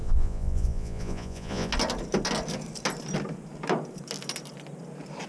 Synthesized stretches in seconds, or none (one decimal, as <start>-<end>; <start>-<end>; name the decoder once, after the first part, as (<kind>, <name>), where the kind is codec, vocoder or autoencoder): 0.0-1.7 (vocoder, Vocos)